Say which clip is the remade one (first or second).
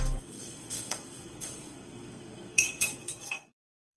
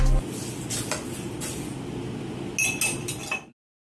first